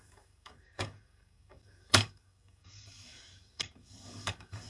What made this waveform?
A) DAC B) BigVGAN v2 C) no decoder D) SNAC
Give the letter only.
A